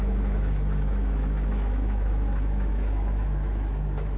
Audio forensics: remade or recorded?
remade